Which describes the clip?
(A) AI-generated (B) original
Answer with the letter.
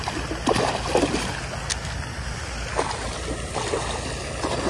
B